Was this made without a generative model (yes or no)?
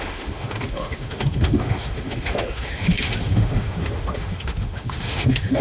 no